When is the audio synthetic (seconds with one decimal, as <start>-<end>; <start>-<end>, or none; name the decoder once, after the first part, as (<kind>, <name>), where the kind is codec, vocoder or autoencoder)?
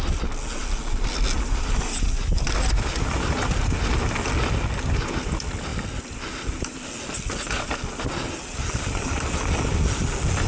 none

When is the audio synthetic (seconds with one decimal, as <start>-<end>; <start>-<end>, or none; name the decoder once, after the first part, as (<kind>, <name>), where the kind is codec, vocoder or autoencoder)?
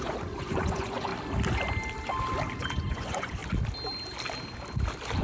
0.0-1.1 (vocoder, Vocos); 2.6-3.4